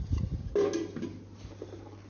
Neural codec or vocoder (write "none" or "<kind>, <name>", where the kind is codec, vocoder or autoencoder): none